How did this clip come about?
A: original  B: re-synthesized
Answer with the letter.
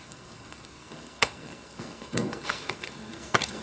B